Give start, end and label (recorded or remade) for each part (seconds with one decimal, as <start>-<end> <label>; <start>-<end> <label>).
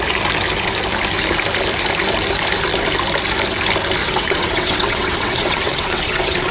0.0-4.0 recorded; 4.0-6.5 remade